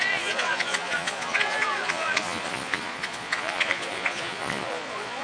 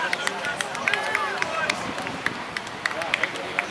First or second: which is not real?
first